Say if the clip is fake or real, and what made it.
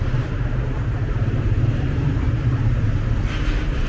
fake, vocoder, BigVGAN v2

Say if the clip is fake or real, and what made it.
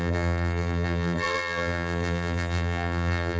fake, vocoder, BigVGAN v2